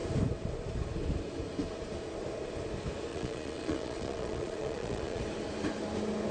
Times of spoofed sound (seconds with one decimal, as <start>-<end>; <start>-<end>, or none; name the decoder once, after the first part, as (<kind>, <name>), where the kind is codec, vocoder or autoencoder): 3.1-5.2 (vocoder, Vocos)